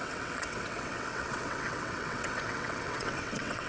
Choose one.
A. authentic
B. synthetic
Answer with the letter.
B